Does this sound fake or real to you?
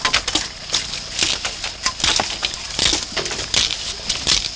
real